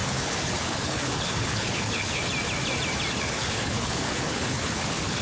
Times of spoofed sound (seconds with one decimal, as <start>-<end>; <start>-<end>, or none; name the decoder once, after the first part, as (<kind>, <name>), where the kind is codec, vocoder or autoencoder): 0.0-2.2 (codec, HILCodec); 3.2-5.2